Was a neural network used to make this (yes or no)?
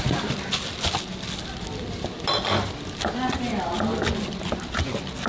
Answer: no